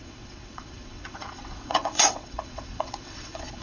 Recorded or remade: remade